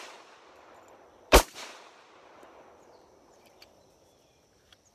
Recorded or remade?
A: remade